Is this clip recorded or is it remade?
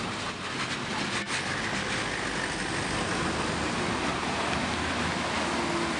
recorded